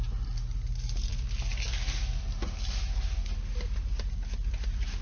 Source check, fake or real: real